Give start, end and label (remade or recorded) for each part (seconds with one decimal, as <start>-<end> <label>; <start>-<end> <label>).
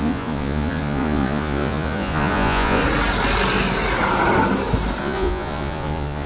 0.0-2.8 remade; 2.8-5.0 recorded; 5.0-6.3 remade